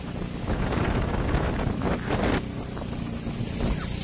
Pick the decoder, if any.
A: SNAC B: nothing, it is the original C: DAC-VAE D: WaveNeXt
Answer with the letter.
B